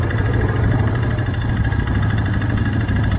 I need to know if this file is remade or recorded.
recorded